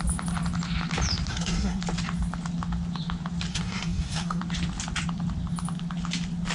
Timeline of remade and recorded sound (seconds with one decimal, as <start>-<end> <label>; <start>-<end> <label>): 0.0-1.3 recorded; 1.3-1.8 remade; 1.8-3.5 recorded; 3.5-4.4 remade; 4.4-6.5 recorded